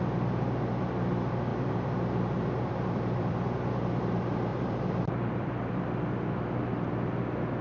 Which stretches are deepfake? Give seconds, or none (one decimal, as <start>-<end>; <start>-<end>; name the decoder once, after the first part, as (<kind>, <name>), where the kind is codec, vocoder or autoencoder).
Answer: 1.5-4.0 (vocoder, BigVGAN v2); 4.5-5.7